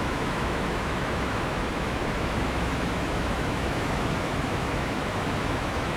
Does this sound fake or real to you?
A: fake